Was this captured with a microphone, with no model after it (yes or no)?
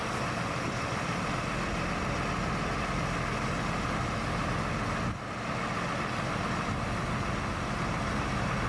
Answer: yes